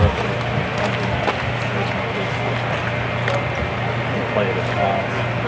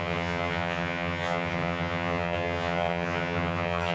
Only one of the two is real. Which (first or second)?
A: first